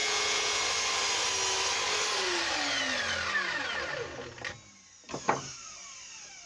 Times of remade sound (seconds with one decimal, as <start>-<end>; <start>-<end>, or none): 0.0-0.6

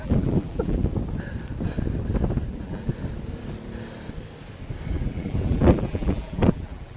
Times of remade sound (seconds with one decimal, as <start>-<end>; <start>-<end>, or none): 0.0-0.8; 2.5-2.9; 4.9-7.0

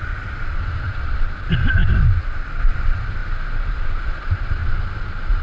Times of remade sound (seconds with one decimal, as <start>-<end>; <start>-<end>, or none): 0.0-1.8; 2.6-4.6

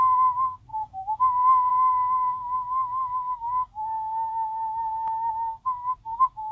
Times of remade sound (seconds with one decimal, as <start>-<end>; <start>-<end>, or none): 0.7-1.2; 1.7-5.3